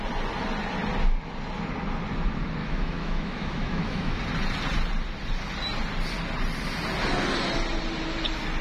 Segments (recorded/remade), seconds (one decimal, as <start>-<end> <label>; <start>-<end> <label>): 0.0-2.6 recorded; 2.6-4.2 remade; 4.2-8.6 recorded